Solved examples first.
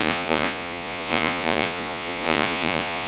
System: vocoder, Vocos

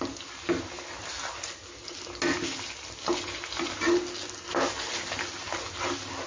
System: none